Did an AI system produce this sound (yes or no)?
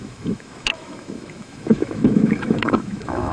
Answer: yes